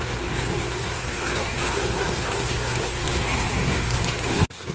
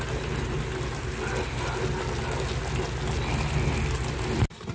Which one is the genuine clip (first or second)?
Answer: second